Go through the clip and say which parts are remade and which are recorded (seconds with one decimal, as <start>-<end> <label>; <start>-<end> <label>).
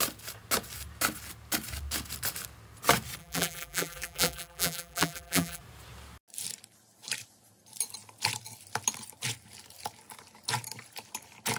0.0-3.2 recorded; 3.2-5.6 remade; 5.6-11.6 recorded